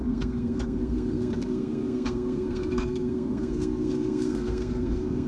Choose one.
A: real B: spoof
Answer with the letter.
B